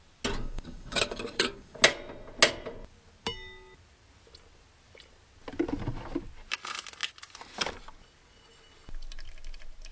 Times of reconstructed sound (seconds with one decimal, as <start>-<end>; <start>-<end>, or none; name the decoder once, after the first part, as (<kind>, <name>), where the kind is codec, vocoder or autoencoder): 0.4-1.8 (codec, DAC)